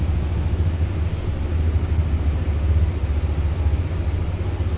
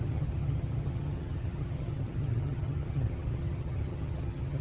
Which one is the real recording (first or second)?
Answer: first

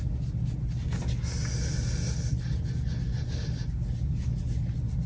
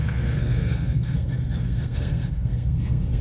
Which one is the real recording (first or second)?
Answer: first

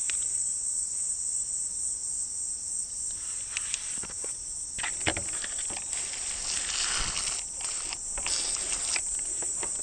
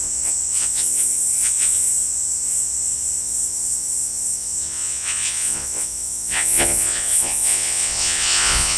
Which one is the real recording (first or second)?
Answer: first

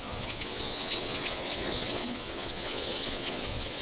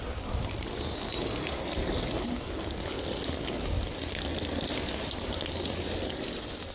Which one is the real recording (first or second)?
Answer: second